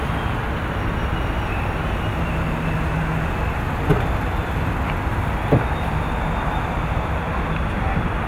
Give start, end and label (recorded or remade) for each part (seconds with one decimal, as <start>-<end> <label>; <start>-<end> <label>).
0.0-8.3 recorded